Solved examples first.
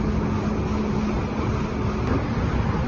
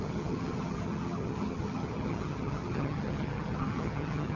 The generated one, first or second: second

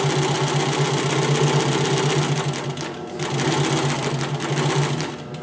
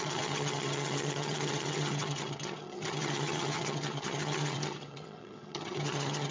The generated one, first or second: second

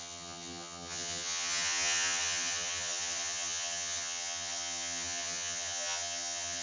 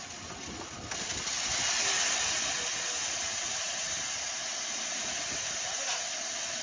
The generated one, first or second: first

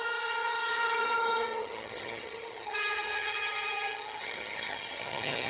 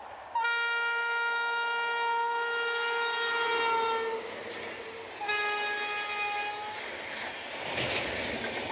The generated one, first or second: first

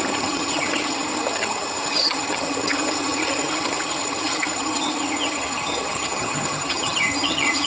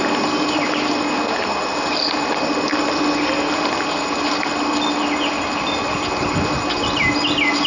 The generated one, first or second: first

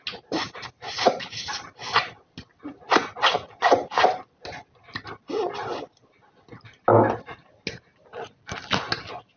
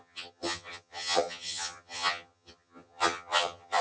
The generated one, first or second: second